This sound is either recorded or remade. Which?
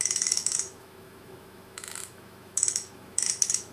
remade